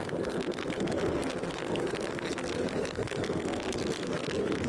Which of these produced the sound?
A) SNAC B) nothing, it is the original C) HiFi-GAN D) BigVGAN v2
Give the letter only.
A